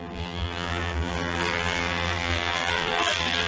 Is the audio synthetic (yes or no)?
yes